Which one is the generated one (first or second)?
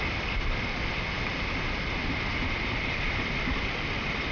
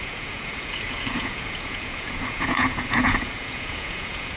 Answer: second